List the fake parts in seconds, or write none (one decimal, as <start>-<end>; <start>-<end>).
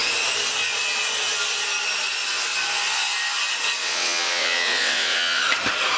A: 3.8-5.4